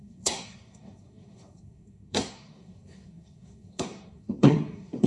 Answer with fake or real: fake